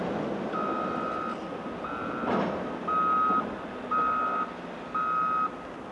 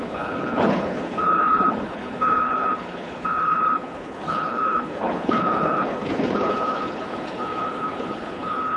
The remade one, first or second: second